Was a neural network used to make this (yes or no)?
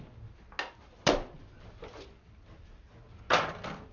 no